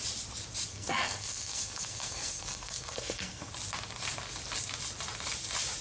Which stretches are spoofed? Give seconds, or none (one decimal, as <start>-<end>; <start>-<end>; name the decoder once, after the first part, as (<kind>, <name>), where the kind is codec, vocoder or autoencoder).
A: 0.7-3.5 (codec, SNAC)